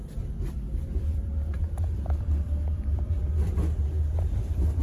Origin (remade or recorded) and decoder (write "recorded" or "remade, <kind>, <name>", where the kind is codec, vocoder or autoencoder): remade, vocoder, BigVGAN v2